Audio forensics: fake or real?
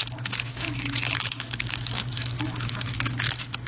fake